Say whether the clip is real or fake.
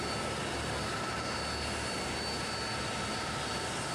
real